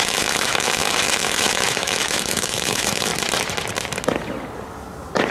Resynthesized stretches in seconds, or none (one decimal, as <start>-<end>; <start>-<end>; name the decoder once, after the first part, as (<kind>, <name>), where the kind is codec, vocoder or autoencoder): 0.0-3.1 (autoencoder, DAC-VAE)